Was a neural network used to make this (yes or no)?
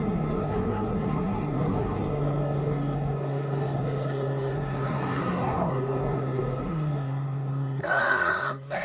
yes